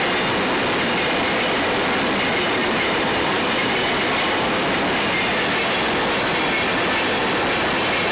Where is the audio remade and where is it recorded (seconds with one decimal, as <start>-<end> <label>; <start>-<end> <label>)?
0.0-2.6 recorded; 2.6-3.7 remade; 3.7-8.1 recorded